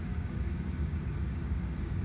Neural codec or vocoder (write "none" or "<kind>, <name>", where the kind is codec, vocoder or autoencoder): codec, DAC